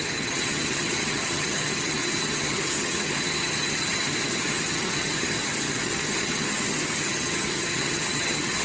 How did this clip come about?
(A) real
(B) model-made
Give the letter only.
B